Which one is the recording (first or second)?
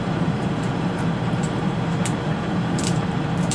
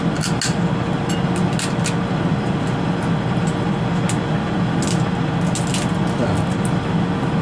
second